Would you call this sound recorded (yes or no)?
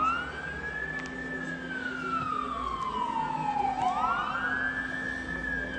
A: yes